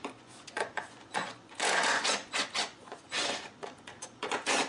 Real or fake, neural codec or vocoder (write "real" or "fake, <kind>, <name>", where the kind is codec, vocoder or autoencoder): fake, vocoder, Vocos